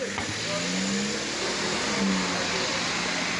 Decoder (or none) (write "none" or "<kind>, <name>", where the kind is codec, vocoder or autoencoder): none